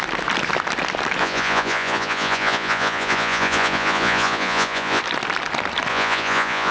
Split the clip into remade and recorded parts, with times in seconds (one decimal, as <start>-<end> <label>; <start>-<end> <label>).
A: 0.0-1.2 recorded; 1.2-5.0 remade; 5.0-5.9 recorded; 5.9-6.7 remade